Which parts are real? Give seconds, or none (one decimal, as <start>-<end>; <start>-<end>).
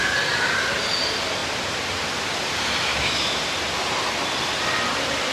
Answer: 0.0-2.9; 3.4-5.3